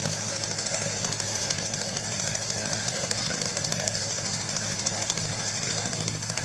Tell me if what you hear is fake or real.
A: fake